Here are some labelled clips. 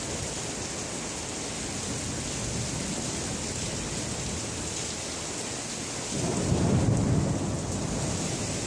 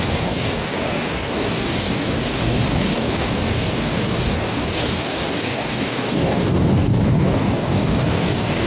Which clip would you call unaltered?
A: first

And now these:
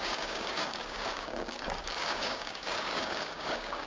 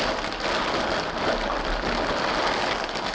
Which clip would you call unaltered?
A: second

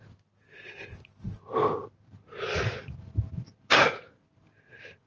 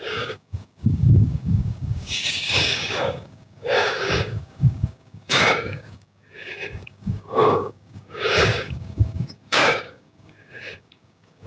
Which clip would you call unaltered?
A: first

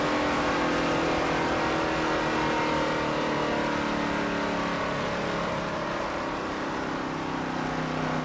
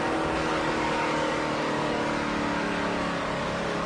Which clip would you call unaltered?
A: first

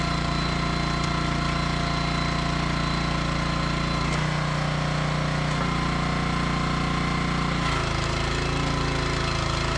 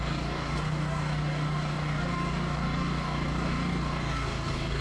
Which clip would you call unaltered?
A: first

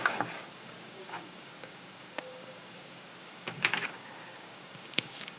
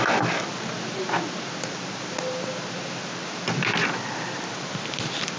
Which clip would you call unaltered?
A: second